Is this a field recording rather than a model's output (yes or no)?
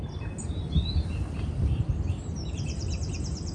yes